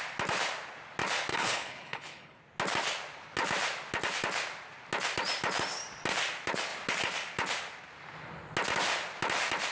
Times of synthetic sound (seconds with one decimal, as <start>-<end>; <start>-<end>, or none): 1.3-2.4